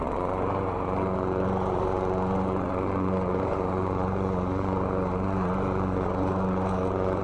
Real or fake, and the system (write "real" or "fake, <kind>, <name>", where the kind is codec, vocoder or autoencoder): fake, vocoder, Vocos